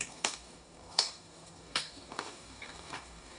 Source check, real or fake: fake